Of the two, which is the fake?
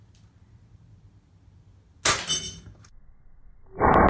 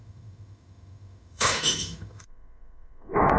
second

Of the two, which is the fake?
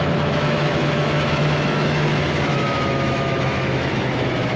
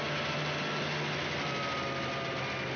first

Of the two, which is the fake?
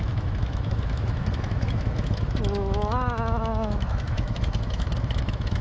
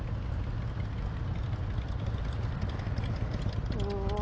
first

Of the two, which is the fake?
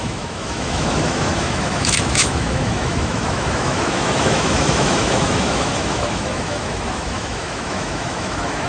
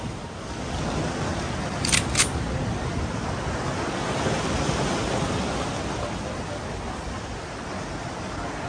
first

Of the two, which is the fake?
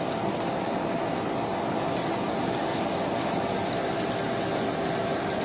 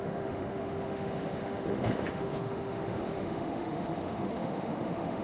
second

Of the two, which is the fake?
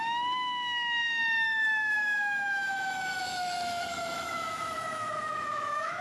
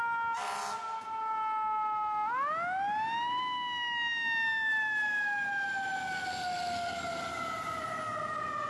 first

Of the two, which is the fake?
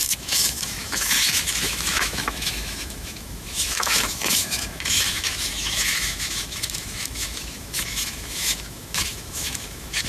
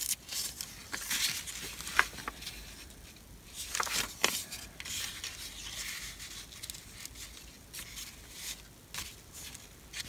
first